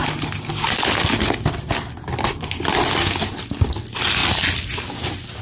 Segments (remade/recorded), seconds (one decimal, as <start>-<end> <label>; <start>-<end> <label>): 0.0-5.4 recorded